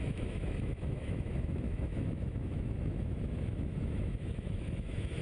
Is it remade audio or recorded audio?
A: remade